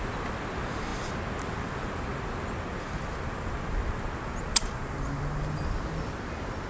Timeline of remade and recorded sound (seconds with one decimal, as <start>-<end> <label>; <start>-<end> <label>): 0.0-6.7 recorded